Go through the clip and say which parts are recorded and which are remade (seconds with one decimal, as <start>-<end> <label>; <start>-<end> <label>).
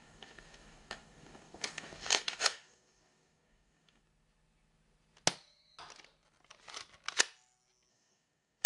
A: 0.0-4.0 remade; 4.0-7.9 recorded; 7.9-8.7 remade